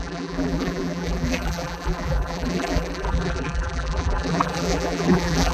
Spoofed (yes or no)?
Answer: yes